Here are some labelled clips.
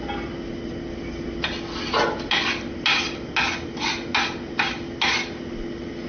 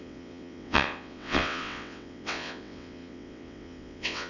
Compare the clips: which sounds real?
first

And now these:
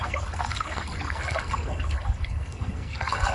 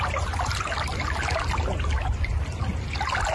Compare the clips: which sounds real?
second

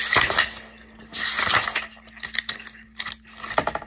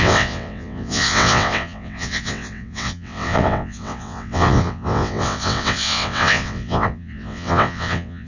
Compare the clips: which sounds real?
first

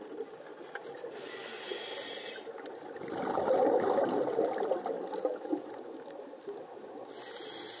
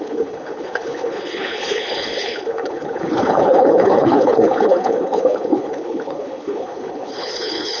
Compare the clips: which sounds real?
first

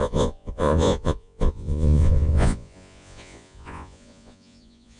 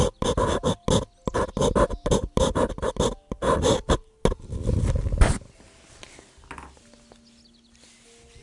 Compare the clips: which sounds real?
second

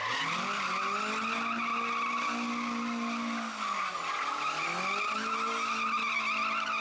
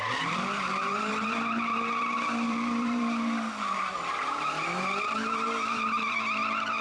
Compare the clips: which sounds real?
first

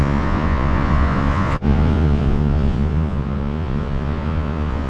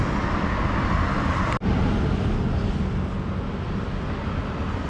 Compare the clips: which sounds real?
second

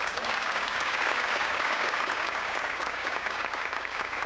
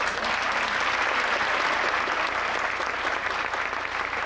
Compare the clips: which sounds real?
second